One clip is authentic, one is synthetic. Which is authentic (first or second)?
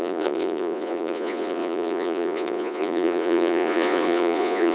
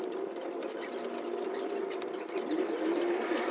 second